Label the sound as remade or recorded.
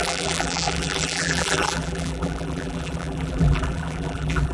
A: remade